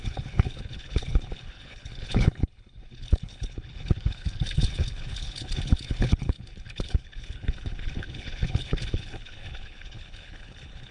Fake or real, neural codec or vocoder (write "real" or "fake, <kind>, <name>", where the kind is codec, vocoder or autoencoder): fake, codec, HILCodec